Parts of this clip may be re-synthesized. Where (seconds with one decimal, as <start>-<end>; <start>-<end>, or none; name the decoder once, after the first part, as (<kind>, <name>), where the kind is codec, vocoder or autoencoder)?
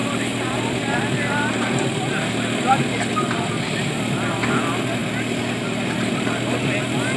0.0-3.1 (vocoder, BigVGAN v2)